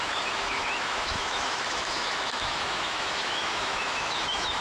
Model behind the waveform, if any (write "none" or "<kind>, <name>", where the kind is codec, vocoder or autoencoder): autoencoder, DAC-VAE